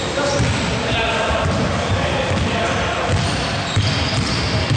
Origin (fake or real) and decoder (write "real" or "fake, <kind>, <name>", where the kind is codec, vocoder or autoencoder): real